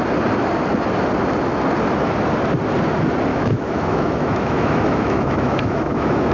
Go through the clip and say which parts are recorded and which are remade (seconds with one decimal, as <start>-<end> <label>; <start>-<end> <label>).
0.0-3.3 recorded; 3.3-6.3 remade